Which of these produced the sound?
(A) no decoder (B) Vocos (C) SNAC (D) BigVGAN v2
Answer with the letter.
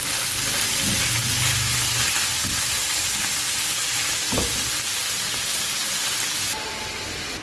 A